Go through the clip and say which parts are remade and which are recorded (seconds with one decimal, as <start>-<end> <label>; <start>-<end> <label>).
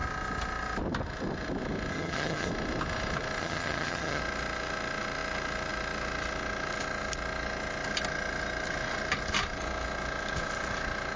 0.0-1.9 recorded; 1.9-2.5 remade; 2.5-3.4 recorded; 3.4-4.2 remade; 4.2-11.2 recorded